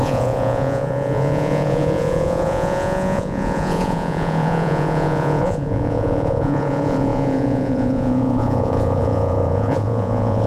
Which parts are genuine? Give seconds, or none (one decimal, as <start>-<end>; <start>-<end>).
none